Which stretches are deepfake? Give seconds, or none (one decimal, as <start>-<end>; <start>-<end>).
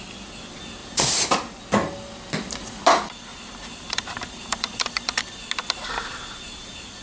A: 0.8-1.6; 3.3-5.2